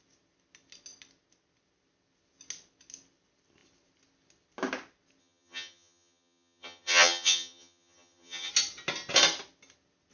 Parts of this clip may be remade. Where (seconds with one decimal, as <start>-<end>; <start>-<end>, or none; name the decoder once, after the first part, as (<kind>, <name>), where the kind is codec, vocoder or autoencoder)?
5.2-8.5 (vocoder, HiFi-GAN)